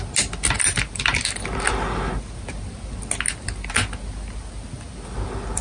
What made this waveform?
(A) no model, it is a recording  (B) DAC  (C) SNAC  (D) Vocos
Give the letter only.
A